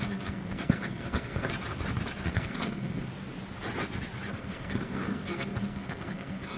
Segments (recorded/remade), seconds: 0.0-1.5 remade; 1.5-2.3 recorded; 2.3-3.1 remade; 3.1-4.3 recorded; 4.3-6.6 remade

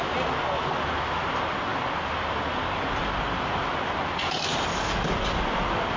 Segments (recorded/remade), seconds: 0.0-6.0 recorded